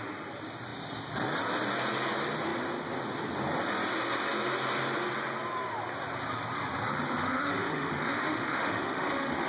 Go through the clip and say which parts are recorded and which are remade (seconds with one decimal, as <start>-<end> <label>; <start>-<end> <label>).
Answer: 0.0-7.2 recorded; 7.2-9.5 remade